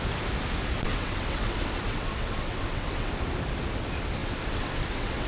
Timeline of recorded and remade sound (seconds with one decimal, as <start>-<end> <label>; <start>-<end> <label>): 0.0-0.9 recorded; 0.9-3.1 remade; 3.1-4.2 recorded; 4.2-5.3 remade